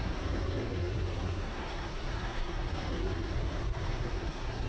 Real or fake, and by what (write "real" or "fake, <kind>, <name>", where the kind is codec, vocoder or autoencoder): fake, codec, SNAC